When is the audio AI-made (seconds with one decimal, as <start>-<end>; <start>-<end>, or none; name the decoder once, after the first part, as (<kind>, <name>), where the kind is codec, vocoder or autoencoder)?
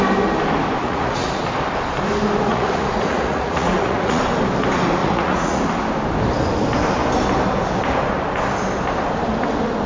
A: 0.8-1.4 (vocoder, Vocos); 2.5-4.2; 5.0-5.6